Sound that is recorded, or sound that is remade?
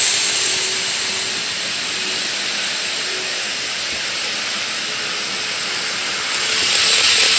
recorded